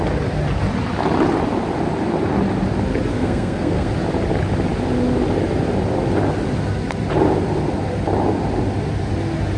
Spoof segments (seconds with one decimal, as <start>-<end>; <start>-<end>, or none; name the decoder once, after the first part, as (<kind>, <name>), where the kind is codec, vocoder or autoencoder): 3.1-3.9 (codec, SNAC)